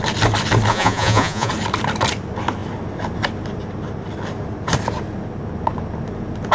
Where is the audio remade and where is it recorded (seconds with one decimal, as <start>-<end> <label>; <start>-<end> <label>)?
0.0-0.7 recorded; 0.7-1.5 remade; 1.5-6.5 recorded